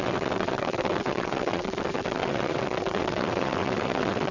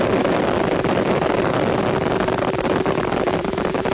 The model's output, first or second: first